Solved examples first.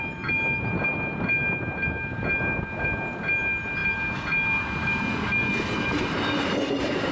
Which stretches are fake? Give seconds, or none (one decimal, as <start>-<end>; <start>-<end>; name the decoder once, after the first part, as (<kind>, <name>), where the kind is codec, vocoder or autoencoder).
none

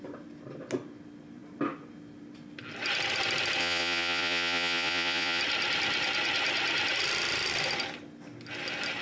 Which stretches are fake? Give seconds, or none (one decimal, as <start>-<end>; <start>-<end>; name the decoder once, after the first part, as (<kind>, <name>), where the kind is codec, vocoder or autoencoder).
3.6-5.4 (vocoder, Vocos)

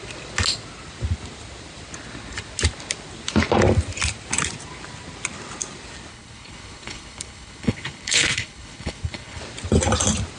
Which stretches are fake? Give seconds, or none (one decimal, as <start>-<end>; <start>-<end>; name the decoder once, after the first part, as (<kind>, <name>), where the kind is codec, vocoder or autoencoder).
6.1-9.4 (codec, HILCodec)

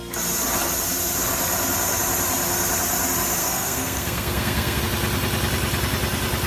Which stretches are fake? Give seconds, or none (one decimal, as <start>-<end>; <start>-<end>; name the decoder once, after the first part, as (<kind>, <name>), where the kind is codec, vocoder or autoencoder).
3.4-4.8 (codec, SNAC)

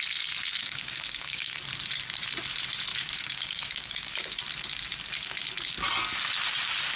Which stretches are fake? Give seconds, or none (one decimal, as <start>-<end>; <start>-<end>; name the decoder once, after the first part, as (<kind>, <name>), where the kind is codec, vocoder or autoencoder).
0.6-1.6 (codec, DAC); 2.9-4.4

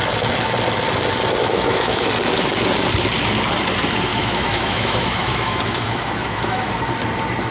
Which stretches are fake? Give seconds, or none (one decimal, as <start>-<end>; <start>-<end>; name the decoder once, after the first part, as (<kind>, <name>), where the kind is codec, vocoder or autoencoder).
1.4-2.1 (autoencoder, DAC-VAE); 4.1-6.8